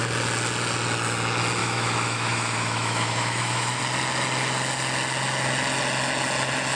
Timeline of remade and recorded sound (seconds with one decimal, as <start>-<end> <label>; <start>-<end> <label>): 0.0-1.6 recorded; 1.6-3.8 remade; 3.8-6.8 recorded